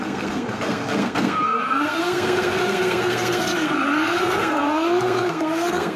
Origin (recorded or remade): remade